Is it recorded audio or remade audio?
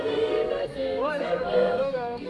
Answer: remade